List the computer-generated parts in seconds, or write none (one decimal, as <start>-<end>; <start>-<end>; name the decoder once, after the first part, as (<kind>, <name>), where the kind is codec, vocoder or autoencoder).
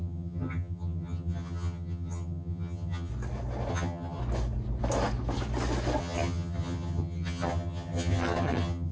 0.0-3.1 (vocoder, HiFi-GAN); 3.7-4.2; 6.0-8.9